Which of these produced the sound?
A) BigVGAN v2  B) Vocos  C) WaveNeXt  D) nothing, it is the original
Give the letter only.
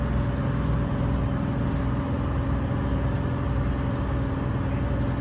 D